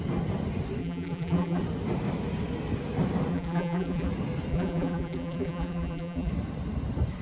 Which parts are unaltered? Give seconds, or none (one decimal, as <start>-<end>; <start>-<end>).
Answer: 0.0-0.8; 1.6-3.3; 4.1-4.5; 6.3-7.2